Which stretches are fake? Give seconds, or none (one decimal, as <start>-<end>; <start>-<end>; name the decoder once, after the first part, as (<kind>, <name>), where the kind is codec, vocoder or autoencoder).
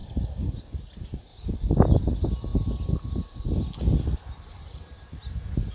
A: none